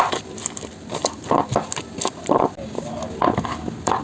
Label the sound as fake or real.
real